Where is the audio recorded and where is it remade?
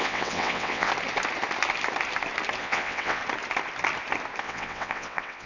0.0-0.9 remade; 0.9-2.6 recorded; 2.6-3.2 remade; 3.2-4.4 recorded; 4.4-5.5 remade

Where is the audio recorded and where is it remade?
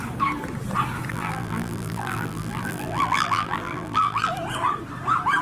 0.0-1.1 recorded; 1.1-4.3 remade; 4.3-5.4 recorded